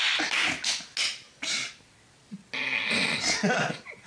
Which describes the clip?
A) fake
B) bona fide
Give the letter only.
B